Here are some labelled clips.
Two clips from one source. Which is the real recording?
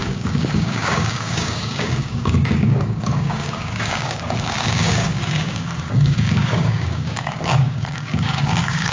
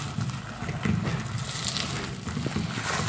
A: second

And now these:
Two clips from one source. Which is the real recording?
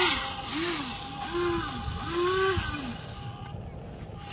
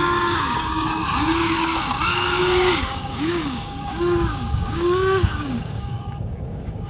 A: first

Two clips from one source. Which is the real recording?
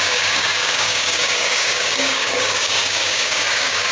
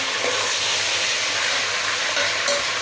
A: second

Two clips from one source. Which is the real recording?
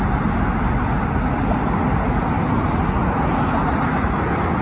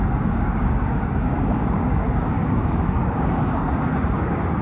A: first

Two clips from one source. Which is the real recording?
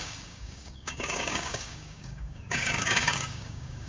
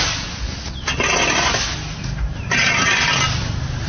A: second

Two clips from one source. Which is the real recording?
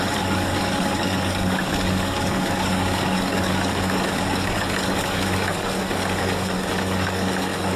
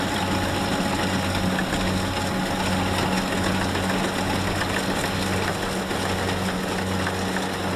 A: second